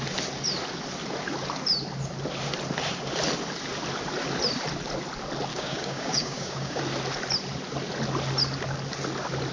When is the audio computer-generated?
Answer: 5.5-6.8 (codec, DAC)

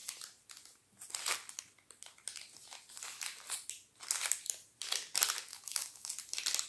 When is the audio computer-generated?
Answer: 5.5-6.1 (codec, DAC)

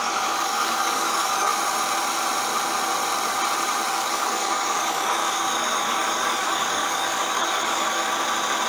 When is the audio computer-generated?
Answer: 0.0-1.5 (codec, DAC); 3.9-8.1

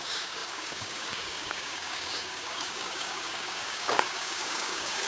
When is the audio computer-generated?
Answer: 0.0-5.1 (codec, DAC)

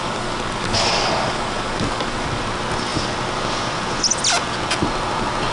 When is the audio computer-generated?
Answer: 0.0-2.4 (codec, DAC)

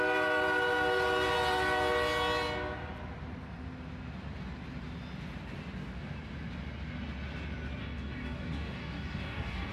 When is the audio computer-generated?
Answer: 7.8-9.7 (codec, DAC)

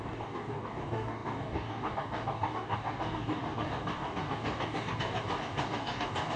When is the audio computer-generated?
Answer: 0.0-6.4 (codec, DAC)